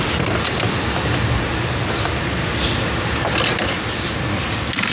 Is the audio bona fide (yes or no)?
yes